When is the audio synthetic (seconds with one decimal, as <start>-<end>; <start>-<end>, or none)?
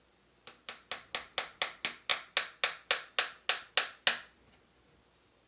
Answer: none